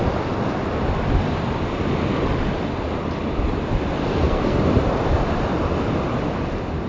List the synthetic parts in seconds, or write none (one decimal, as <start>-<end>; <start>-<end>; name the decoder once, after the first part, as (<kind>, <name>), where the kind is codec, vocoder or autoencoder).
4.1-4.6 (codec, SNAC)